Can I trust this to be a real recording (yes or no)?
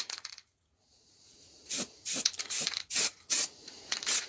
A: no